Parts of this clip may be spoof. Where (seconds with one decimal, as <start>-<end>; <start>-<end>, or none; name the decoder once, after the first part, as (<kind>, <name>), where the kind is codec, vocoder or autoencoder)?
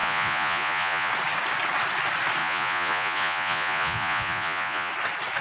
0.0-1.1 (vocoder, Vocos); 2.4-4.9